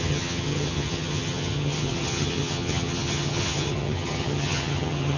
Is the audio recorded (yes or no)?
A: no